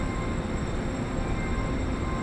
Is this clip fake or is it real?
real